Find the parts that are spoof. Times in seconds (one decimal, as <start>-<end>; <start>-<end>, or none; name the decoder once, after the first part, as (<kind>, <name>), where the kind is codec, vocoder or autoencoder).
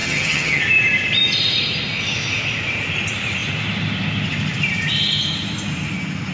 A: 0.0-0.6 (vocoder, HiFi-GAN)